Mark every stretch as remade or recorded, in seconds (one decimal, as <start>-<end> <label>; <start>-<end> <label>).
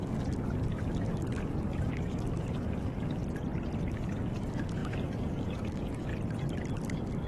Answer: 0.0-3.2 remade; 3.2-3.9 recorded; 3.9-6.1 remade; 6.1-6.8 recorded; 6.8-7.3 remade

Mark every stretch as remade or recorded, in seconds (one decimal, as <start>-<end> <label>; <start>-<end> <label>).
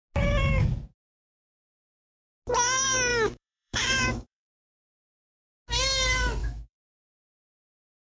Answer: 0.0-3.1 recorded; 3.1-4.9 remade; 4.9-6.4 recorded; 6.4-7.4 remade; 7.4-8.0 recorded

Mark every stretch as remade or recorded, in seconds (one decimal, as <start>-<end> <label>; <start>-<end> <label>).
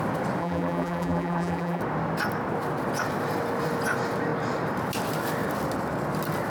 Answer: 0.0-0.4 recorded; 0.4-1.8 remade; 1.8-6.5 recorded